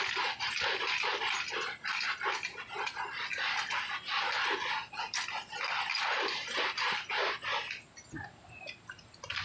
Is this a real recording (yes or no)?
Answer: yes